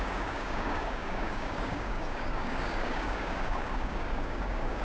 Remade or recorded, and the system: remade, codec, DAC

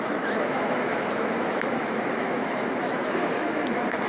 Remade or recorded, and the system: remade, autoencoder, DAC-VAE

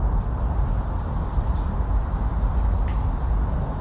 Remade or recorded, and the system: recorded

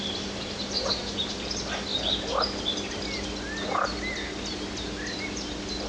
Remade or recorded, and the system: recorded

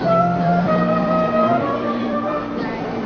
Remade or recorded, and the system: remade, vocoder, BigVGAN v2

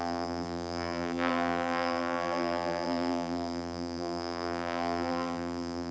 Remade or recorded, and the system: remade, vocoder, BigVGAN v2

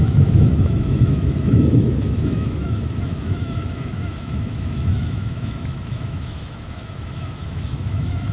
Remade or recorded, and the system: remade, autoencoder, DAC-VAE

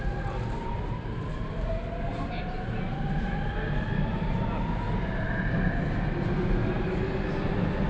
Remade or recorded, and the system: recorded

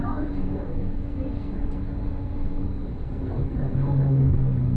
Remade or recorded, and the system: remade, codec, SNAC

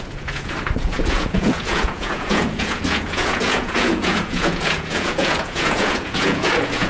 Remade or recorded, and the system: remade, vocoder, Vocos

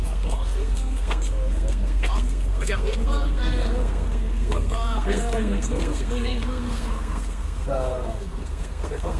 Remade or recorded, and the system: remade, codec, SNAC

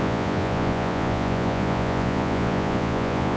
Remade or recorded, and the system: remade, vocoder, Vocos